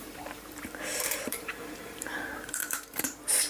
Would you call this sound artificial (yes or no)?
yes